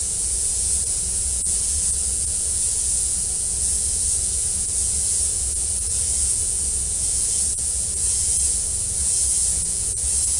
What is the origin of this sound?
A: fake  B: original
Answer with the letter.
A